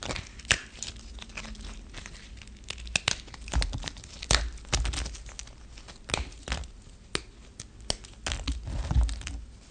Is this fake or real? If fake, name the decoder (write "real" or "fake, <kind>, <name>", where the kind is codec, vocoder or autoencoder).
real